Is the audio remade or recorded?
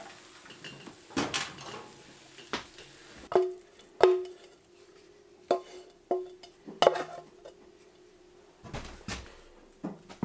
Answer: recorded